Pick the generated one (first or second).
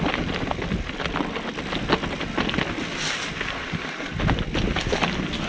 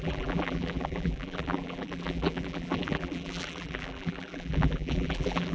second